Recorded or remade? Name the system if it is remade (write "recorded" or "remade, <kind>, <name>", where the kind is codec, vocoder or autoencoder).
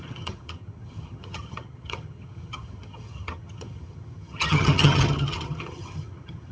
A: remade, vocoder, HiFi-GAN